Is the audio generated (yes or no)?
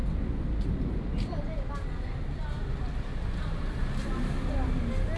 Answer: no